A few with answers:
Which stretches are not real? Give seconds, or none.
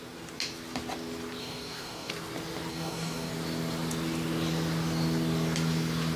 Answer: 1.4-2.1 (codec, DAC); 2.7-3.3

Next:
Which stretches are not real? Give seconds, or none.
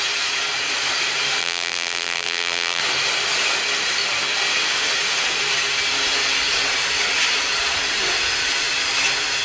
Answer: 1.4-2.8 (vocoder, BigVGAN v2)